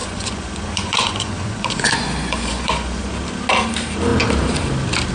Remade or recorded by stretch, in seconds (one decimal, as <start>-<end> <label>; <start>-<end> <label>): 0.0-3.1 remade; 3.1-5.1 recorded